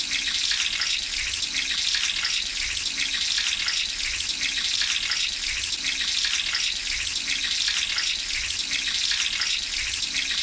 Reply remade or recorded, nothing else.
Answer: recorded